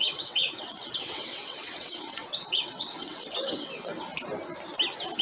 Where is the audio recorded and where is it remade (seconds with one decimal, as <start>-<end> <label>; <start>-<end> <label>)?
0.0-3.9 remade; 3.9-5.2 recorded